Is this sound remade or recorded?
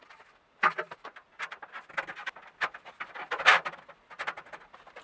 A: recorded